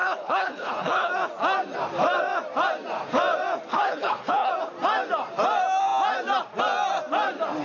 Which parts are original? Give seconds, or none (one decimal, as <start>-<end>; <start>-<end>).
1.1-3.7; 4.5-7.6